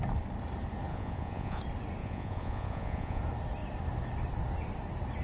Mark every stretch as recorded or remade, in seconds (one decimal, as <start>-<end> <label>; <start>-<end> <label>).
0.0-0.9 recorded; 0.9-1.6 remade; 1.6-2.0 recorded; 2.0-3.2 remade; 3.2-5.2 recorded